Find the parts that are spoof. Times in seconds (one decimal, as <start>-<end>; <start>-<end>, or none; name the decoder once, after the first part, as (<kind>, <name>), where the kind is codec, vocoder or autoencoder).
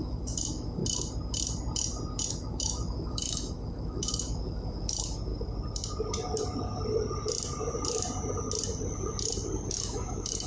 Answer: 0.0-0.8 (autoencoder, DAC-VAE); 2.3-5.3; 9.7-10.5